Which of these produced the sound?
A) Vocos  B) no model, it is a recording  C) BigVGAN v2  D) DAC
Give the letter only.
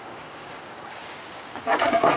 D